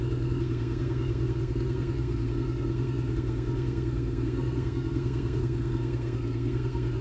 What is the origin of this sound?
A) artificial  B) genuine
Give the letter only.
A